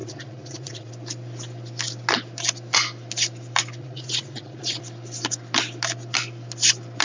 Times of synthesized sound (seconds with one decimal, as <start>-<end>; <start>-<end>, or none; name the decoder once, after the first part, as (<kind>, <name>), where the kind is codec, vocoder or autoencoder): 0.0-0.9 (vocoder, Vocos); 3.8-4.8